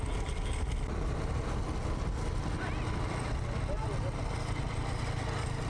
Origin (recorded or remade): recorded